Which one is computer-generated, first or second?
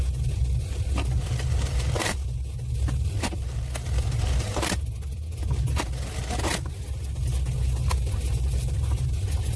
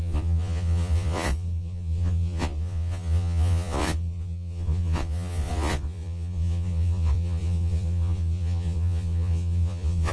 second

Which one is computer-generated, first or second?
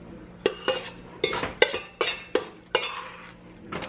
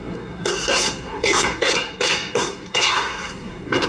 second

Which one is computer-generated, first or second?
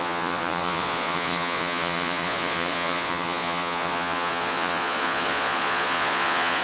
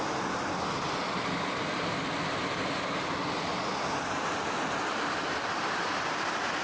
first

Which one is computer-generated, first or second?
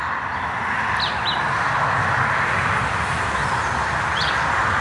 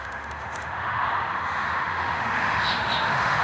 second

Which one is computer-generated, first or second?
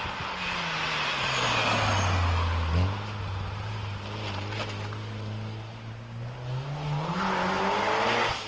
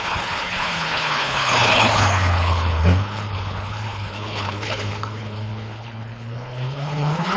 second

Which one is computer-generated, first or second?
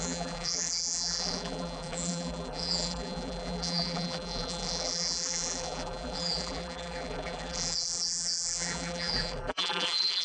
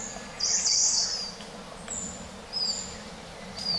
first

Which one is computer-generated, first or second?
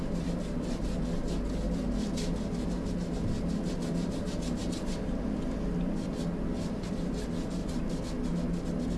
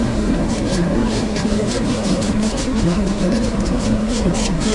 second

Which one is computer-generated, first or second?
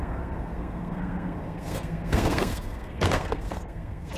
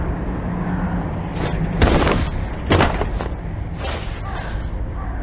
first